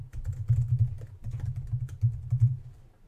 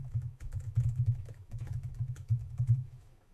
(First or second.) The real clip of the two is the first